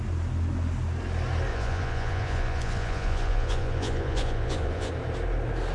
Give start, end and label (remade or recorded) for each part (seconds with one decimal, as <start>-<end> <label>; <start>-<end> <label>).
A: 0.0-1.5 recorded; 1.5-4.9 remade; 4.9-5.7 recorded